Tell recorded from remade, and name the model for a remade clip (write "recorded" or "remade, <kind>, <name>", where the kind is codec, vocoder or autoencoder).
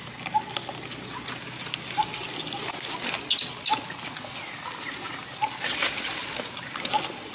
recorded